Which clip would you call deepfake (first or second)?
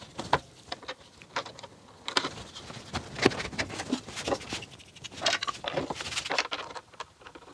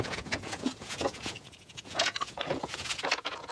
second